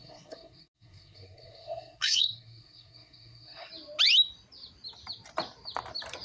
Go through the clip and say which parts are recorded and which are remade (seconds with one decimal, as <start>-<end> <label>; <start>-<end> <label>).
0.0-3.7 remade; 3.7-6.2 recorded